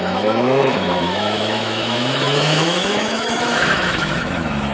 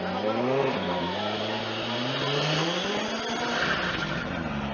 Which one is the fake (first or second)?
first